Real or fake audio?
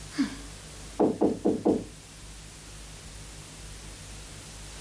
real